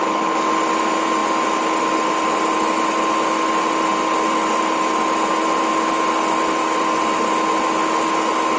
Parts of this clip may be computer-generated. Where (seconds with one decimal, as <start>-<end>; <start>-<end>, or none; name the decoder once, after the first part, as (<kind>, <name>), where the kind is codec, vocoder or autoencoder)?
none

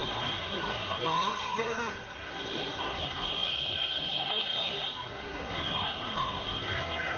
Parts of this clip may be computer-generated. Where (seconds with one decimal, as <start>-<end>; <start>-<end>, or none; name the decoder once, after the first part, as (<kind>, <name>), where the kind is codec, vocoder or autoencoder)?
0.0-7.2 (codec, SNAC)